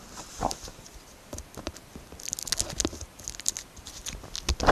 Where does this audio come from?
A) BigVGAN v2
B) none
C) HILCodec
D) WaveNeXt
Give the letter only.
B